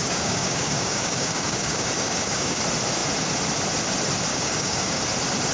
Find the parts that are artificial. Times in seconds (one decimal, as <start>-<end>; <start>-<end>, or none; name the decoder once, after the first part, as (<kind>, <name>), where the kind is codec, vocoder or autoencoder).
0.0-2.6 (codec, DAC); 4.3-5.0

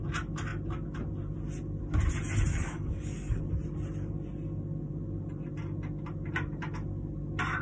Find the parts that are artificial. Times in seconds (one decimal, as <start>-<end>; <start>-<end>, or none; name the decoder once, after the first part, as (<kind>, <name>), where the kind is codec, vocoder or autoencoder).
2.5-3.4 (codec, DAC)

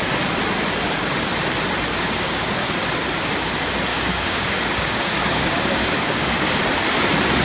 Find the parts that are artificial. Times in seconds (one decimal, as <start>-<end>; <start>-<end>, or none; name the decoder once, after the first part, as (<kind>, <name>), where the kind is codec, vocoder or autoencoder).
1.9-2.7 (codec, DAC); 3.9-6.6

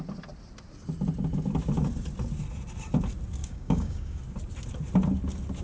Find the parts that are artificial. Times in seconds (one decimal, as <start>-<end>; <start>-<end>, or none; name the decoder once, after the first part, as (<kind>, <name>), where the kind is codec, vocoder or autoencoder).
3.4-4.2 (codec, DAC)

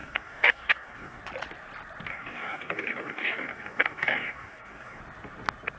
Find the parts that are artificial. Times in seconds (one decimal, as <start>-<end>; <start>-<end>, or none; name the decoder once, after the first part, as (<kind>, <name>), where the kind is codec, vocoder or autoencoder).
0.0-1.2 (codec, DAC); 2.1-5.0